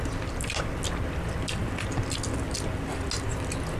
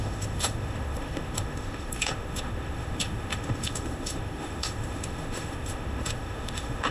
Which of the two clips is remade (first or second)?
second